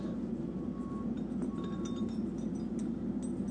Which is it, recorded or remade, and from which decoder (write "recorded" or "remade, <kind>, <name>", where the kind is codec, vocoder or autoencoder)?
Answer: recorded